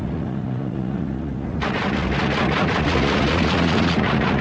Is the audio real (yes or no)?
no